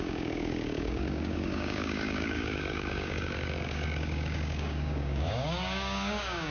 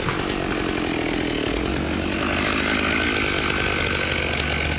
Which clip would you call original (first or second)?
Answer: second